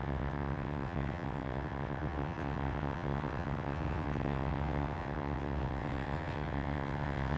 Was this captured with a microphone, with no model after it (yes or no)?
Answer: no